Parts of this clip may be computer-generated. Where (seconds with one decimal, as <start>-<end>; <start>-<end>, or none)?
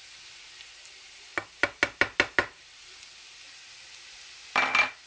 none